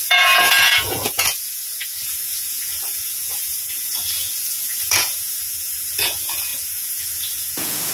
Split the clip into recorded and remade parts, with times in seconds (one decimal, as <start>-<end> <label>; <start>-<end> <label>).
0.0-7.9 remade